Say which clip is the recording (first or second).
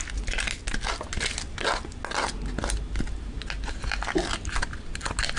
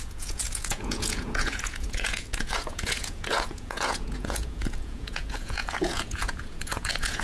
first